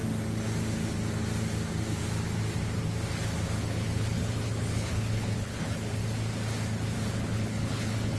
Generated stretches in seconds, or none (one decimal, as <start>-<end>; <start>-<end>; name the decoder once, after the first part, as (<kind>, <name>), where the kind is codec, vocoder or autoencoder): 3.6-6.0 (codec, HILCodec); 7.1-8.2